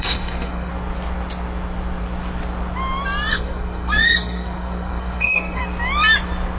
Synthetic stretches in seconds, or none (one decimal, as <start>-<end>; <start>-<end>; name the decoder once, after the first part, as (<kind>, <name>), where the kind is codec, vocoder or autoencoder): 0.0-0.7 (codec, SNAC); 3.3-5.6